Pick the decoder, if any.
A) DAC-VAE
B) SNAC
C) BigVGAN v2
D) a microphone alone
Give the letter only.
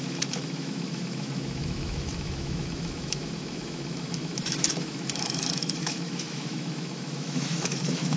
A